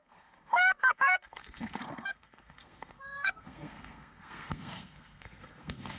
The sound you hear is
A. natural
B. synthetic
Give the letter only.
B